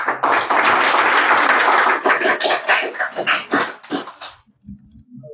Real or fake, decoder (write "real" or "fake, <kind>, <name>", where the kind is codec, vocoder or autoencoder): real